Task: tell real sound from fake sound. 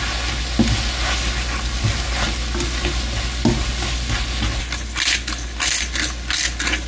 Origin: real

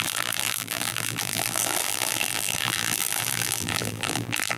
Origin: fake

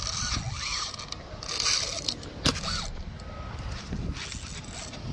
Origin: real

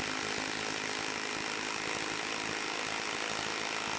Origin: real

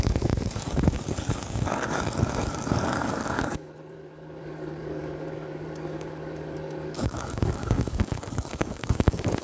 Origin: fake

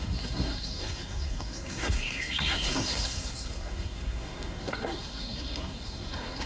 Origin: fake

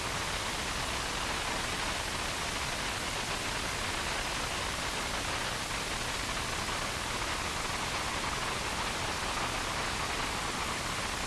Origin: real